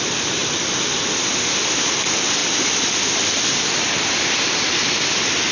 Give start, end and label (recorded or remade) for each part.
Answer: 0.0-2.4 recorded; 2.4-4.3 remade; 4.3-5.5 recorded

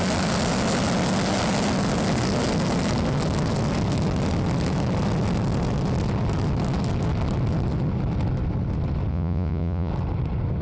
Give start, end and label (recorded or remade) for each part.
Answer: 0.0-9.1 recorded; 9.1-9.9 remade; 9.9-10.6 recorded

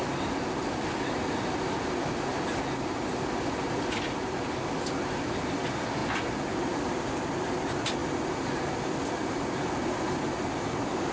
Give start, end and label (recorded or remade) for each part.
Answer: 0.0-11.1 recorded

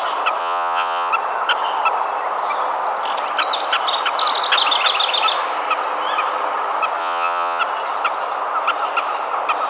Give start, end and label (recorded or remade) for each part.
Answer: 0.0-0.4 recorded; 0.4-1.1 remade; 1.1-7.0 recorded; 7.0-7.6 remade; 7.6-9.7 recorded

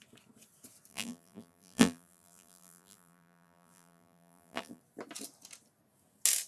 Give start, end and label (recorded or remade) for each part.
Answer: 0.0-0.9 recorded; 0.9-4.8 remade; 4.8-6.5 recorded

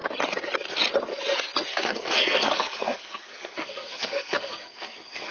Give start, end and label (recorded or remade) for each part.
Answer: 0.0-1.7 recorded; 1.7-5.3 remade